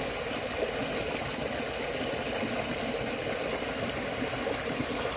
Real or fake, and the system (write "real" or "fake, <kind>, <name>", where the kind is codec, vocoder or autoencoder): real